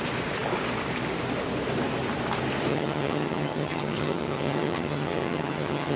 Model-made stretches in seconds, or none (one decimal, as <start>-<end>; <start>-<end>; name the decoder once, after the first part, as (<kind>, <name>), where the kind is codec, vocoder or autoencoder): 2.7-6.0 (vocoder, HiFi-GAN)